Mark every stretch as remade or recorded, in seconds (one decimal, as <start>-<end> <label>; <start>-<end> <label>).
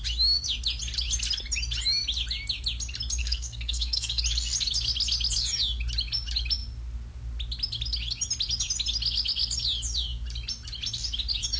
0.0-3.2 recorded; 3.2-4.2 remade; 4.2-11.6 recorded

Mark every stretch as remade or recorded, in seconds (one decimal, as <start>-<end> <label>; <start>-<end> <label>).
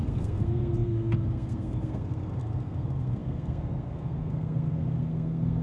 0.0-5.6 remade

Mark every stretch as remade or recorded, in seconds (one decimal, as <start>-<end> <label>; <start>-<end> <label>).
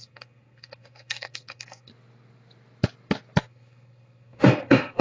0.0-1.9 remade; 1.9-3.4 recorded; 3.4-5.0 remade